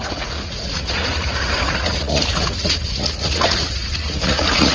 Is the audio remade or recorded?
remade